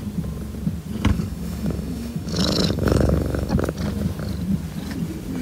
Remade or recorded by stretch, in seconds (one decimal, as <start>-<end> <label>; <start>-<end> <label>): 0.0-1.1 recorded; 1.1-3.5 remade; 3.5-5.4 recorded